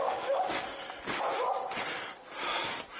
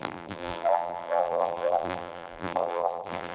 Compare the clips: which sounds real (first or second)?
first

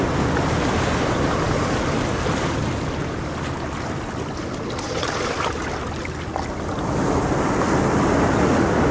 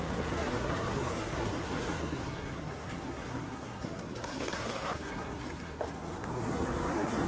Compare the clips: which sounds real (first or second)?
first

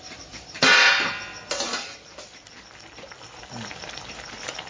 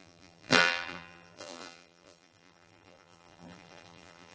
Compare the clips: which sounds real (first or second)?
first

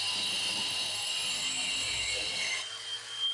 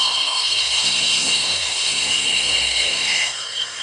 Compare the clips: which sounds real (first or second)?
first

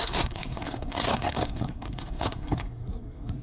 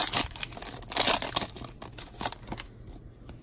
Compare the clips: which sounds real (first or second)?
second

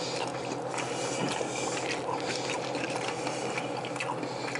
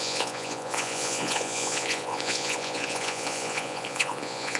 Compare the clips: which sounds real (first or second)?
first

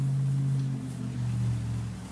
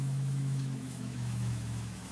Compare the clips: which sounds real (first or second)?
first